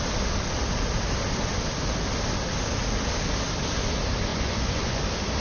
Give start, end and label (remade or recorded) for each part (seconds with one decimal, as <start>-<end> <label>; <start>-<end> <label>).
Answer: 0.0-4.3 recorded; 4.3-5.0 remade; 5.0-5.4 recorded